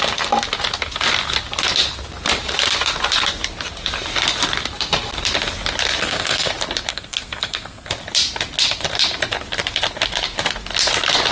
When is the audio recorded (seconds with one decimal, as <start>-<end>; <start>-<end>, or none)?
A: 0.0-6.0; 6.5-6.9; 7.9-11.3